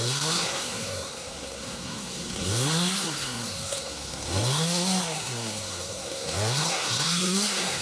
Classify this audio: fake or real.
fake